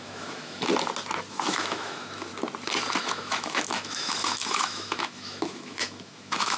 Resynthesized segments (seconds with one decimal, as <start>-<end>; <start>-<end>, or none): 0.0-0.7; 1.3-2.3; 3.0-6.6